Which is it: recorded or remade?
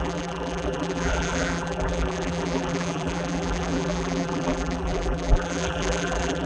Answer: remade